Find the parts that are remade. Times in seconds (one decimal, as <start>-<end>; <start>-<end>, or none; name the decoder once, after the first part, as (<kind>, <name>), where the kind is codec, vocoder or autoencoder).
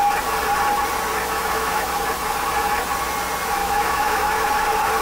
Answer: 1.2-1.9 (autoencoder, DAC-VAE); 3.6-4.5